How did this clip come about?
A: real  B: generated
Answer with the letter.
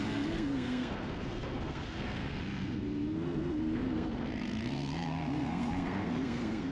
B